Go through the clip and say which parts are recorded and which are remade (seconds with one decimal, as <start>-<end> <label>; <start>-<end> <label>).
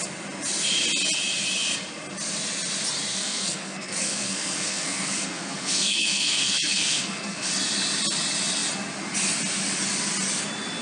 0.0-3.1 recorded; 3.1-7.5 remade; 7.5-10.8 recorded